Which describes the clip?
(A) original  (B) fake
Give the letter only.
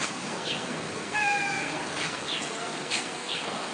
B